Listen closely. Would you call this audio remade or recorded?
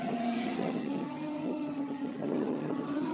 remade